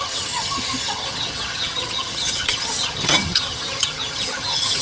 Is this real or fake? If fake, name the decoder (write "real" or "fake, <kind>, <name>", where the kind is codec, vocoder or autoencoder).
fake, vocoder, HiFi-GAN